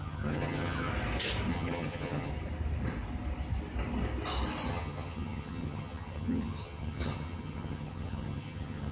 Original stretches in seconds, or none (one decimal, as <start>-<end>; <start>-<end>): 0.9-1.5; 2.3-4.7